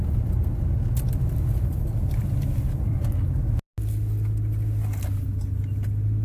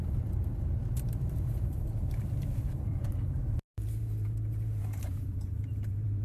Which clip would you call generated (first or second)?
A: second